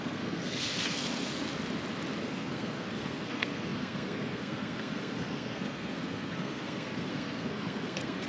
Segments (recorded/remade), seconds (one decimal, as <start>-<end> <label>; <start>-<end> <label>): 0.0-1.3 remade; 1.3-2.2 recorded; 2.2-8.3 remade